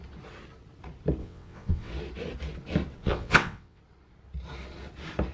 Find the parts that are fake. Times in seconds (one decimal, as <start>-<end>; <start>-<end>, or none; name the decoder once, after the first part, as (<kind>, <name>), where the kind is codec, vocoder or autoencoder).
1.2-1.9 (vocoder, WaveNeXt); 3.0-3.8